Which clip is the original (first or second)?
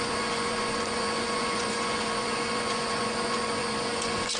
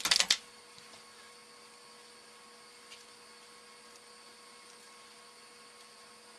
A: second